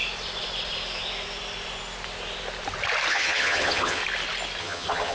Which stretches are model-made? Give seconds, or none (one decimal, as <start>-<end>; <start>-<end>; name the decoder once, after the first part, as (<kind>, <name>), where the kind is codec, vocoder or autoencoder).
3.1-4.0 (vocoder, HiFi-GAN); 4.6-5.1